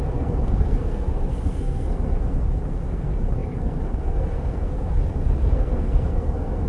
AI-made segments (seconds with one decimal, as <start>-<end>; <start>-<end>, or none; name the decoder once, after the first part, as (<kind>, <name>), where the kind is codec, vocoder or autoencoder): 0.0-6.7 (codec, SNAC)